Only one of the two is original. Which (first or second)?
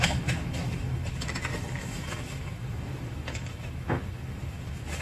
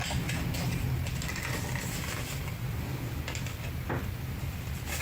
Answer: second